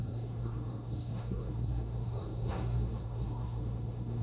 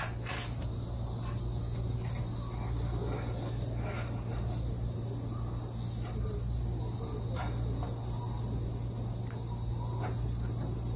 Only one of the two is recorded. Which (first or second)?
second